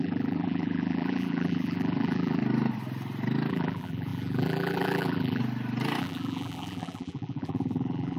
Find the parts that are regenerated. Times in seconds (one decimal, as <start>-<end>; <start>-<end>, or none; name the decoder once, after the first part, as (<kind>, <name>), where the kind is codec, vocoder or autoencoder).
0.0-2.4 (vocoder, BigVGAN v2); 3.5-5.4; 6.0-8.2